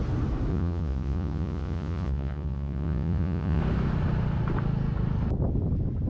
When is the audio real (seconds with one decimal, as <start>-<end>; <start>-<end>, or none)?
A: 0.0-0.5; 3.6-6.1

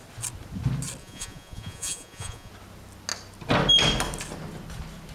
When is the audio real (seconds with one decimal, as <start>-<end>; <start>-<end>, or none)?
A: 0.0-1.0; 2.5-5.1

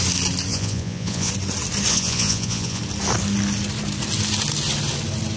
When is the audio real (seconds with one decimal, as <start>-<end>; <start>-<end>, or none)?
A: 0.0-0.5; 1.3-1.9; 2.8-5.4

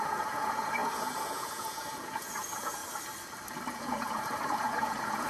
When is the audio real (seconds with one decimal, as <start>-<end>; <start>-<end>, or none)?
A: 2.8-3.7